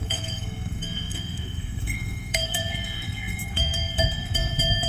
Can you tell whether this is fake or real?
fake